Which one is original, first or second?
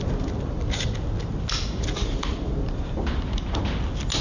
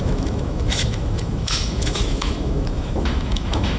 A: first